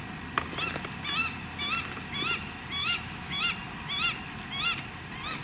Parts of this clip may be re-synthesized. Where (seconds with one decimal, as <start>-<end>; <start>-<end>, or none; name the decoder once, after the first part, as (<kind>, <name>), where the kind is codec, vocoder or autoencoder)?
2.8-3.4 (autoencoder, DAC-VAE)